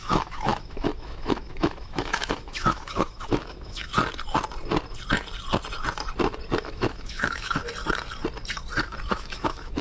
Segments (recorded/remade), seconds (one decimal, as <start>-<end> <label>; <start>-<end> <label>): 0.0-3.9 remade; 3.9-6.6 recorded; 6.6-7.6 remade; 7.6-9.1 recorded; 9.1-9.8 remade